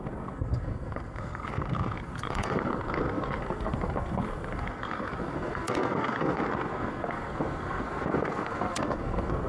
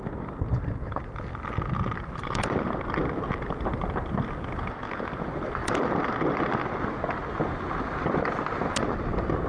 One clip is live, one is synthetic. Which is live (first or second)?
second